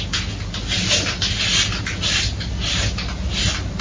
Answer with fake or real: real